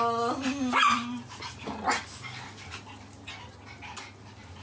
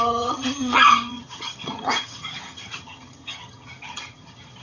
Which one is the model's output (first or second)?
second